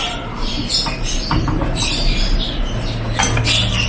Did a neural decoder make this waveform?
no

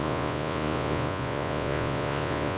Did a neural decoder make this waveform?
yes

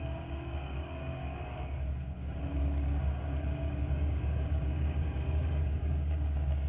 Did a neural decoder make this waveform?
yes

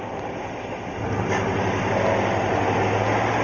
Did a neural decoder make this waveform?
no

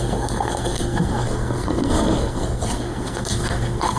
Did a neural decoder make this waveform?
yes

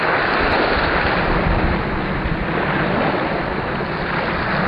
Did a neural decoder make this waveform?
no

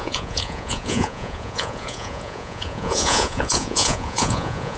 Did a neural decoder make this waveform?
yes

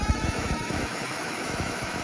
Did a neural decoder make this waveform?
yes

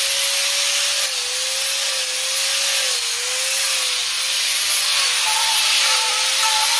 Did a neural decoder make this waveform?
no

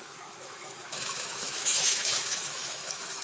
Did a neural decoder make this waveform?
yes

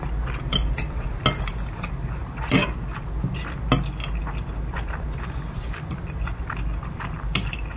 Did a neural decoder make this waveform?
no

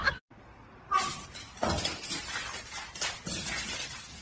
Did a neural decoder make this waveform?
no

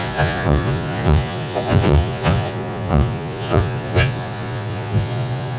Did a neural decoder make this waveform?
yes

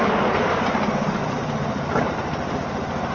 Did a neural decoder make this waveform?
no